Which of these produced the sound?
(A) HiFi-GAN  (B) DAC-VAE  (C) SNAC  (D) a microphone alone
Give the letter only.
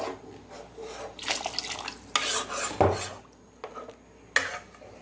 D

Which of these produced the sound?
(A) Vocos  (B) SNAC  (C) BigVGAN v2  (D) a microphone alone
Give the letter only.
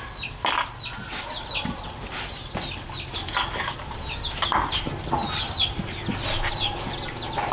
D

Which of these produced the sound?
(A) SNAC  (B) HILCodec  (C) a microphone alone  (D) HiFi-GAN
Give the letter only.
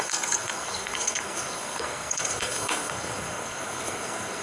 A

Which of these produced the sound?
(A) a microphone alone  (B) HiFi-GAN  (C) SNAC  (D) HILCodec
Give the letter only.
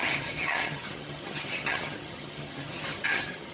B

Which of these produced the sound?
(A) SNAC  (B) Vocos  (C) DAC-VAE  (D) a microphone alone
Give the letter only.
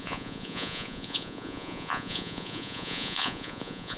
B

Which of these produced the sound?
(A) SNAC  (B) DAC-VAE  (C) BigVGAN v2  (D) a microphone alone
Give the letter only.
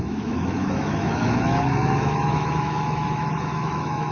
B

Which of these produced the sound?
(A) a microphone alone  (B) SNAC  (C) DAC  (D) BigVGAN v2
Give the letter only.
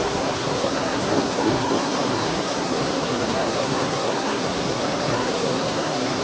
B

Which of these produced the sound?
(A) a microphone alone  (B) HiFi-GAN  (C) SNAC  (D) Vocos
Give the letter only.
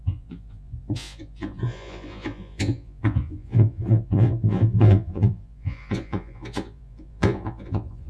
D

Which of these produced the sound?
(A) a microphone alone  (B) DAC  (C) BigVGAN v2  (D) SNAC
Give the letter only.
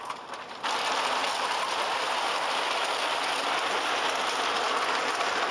A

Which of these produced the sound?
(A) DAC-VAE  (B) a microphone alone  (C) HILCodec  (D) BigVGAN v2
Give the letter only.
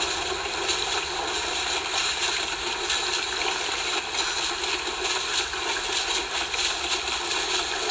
B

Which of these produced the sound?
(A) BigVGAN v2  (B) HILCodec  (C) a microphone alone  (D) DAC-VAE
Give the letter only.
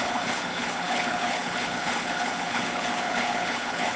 B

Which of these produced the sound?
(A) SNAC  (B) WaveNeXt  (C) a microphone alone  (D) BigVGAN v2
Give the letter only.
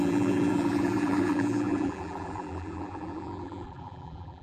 D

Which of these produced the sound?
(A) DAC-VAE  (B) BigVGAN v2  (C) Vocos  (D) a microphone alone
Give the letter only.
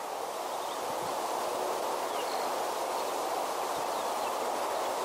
D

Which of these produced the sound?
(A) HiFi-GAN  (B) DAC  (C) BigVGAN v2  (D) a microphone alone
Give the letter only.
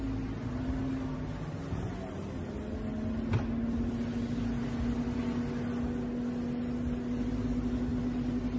D